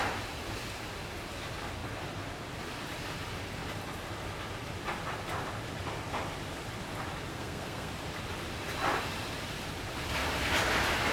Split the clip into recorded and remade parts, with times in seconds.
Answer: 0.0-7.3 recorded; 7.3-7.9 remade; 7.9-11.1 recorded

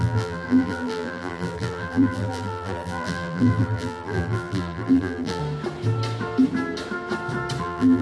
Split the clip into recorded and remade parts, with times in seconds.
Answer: 0.0-5.4 remade; 5.4-7.6 recorded; 7.6-8.0 remade

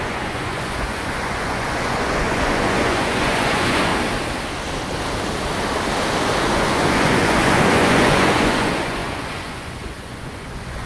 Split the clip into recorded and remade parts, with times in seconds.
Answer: 0.0-3.9 remade; 3.9-6.5 recorded; 6.5-10.9 remade

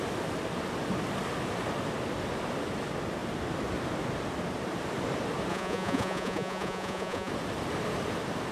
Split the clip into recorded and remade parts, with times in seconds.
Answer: 0.0-5.5 recorded; 5.5-7.3 remade; 7.3-8.5 recorded